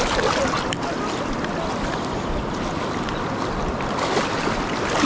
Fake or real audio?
real